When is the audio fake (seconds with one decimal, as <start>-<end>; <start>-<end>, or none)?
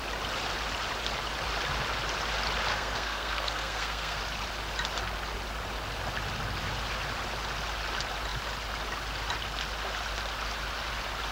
2.7-4.2